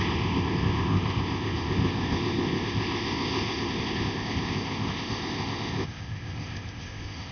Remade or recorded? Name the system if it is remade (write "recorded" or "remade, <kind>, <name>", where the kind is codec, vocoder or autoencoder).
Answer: remade, codec, ZipCodec